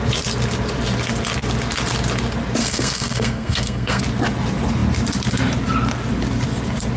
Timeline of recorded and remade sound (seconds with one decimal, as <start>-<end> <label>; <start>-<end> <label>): 0.0-2.6 recorded; 2.6-4.0 remade; 4.0-7.0 recorded